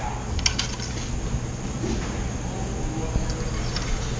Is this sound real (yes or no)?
yes